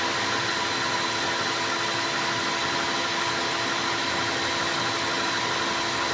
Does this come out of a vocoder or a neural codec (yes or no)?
no